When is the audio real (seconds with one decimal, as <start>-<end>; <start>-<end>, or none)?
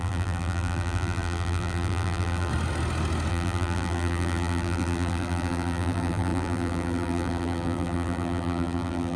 2.5-3.3